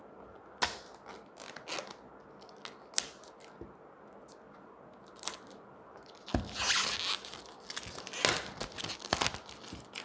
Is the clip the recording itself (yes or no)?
yes